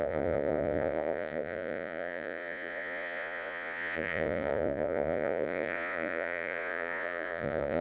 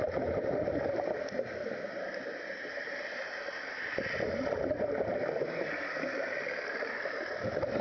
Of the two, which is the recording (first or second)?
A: second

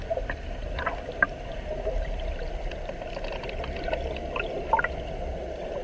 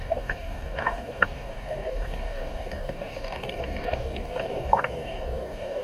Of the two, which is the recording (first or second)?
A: first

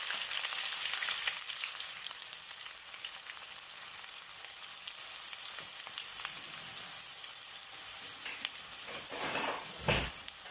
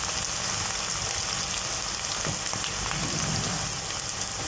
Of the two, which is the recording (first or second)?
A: second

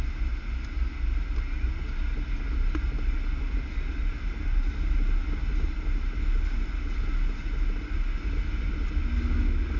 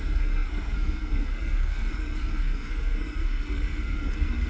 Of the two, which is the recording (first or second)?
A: first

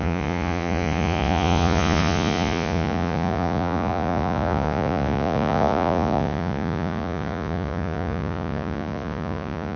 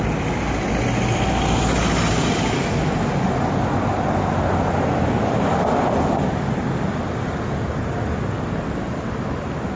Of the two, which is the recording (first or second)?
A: second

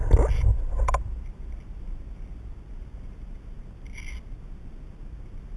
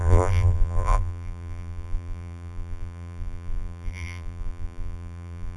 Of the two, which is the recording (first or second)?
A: first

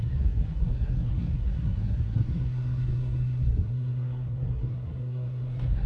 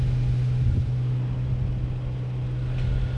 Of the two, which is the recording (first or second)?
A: second